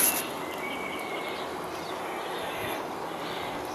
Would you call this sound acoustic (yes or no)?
yes